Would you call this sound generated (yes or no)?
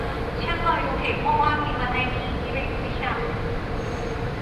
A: yes